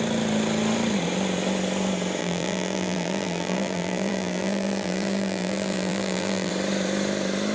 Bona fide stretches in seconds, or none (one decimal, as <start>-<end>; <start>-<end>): 0.0-2.2; 6.5-7.5